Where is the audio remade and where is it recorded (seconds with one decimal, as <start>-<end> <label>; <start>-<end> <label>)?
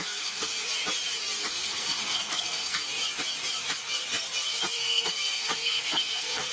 0.0-0.5 remade; 0.5-1.5 recorded; 1.5-2.8 remade; 2.8-4.7 recorded; 4.7-6.5 remade